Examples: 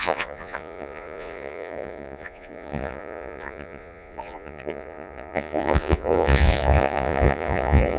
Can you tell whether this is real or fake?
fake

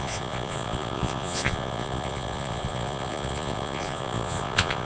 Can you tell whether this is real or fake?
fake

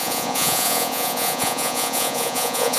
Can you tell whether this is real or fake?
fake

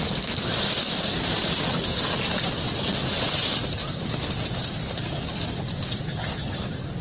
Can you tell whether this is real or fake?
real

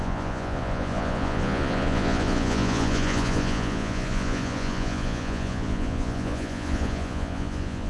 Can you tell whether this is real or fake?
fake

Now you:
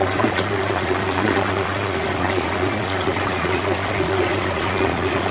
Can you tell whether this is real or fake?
fake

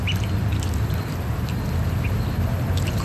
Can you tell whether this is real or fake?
real